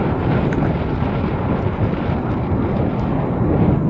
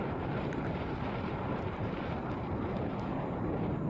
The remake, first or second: second